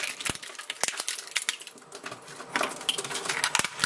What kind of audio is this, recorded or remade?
recorded